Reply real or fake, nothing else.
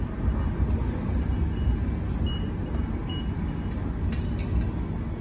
real